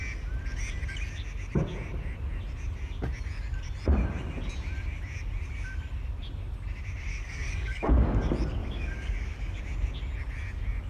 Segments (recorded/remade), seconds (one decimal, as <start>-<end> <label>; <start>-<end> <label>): 0.0-7.1 recorded; 7.1-8.2 remade; 8.2-8.6 recorded; 8.6-9.6 remade; 9.6-10.9 recorded